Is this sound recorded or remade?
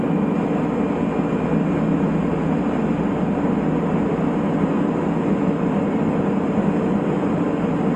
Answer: recorded